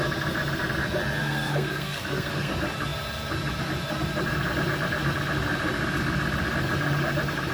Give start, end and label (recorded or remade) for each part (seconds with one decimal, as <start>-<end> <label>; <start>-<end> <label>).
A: 0.0-1.2 recorded; 1.2-2.5 remade; 2.5-7.5 recorded